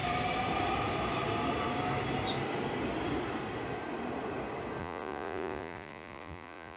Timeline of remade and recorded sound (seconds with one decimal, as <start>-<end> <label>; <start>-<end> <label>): 0.0-4.8 recorded; 4.8-6.8 remade